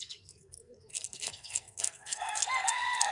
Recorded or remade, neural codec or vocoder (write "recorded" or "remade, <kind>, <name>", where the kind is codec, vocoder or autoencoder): remade, codec, SNAC